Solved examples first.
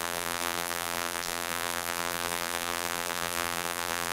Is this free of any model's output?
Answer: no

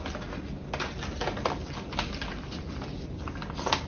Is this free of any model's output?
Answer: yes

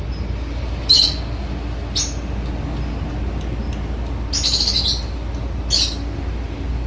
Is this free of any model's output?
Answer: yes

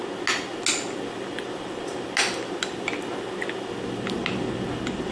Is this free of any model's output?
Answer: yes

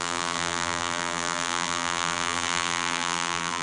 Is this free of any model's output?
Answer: no